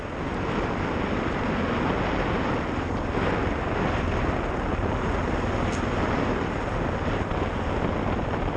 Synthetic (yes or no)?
no